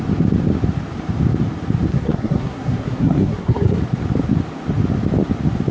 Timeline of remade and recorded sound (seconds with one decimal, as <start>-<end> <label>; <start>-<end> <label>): 0.0-1.9 recorded; 1.9-3.8 remade; 3.8-5.7 recorded